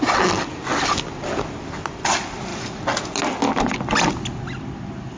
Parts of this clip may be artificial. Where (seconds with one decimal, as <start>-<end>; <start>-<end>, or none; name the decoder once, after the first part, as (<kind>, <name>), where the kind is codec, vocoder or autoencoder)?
none